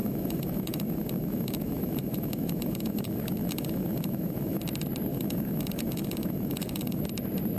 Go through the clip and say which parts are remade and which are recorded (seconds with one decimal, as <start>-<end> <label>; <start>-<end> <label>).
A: 0.0-4.6 remade; 4.6-5.1 recorded; 5.1-7.0 remade; 7.0-7.6 recorded